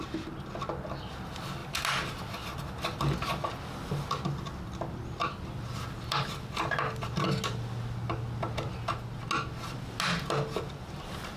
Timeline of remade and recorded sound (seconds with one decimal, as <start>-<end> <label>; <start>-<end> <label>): 0.0-11.4 recorded

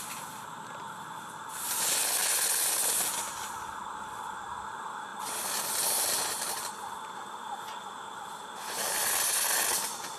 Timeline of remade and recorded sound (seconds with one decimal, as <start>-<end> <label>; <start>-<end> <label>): 0.0-10.2 recorded

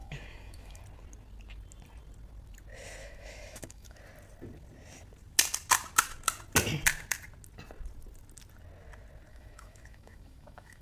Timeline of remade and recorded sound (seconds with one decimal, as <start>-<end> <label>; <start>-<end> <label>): 0.0-0.8 remade; 0.8-3.0 recorded; 3.0-4.0 remade; 4.0-9.3 recorded; 9.3-10.8 remade

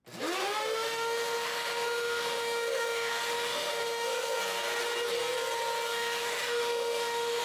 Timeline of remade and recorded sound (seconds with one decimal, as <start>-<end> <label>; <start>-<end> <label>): 0.0-0.4 recorded; 0.4-4.4 remade; 4.4-5.9 recorded; 5.9-7.4 remade

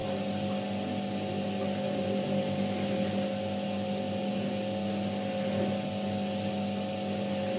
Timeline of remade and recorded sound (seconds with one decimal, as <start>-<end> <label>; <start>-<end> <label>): 0.0-7.6 recorded

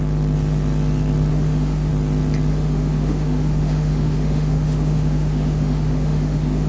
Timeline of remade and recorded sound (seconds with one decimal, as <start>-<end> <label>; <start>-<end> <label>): 0.0-1.3 recorded; 1.3-1.9 remade; 1.9-2.5 recorded; 2.5-6.7 remade

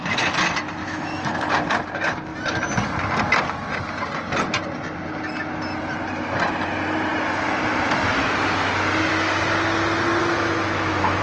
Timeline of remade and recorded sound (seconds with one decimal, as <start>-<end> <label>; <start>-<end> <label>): 0.0-0.8 recorded; 0.8-1.4 remade; 1.4-10.2 recorded; 10.2-11.2 remade

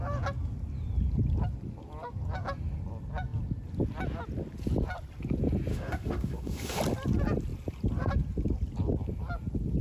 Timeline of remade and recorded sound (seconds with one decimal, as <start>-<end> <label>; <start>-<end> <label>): 0.0-5.7 recorded; 5.7-6.8 remade; 6.8-9.8 recorded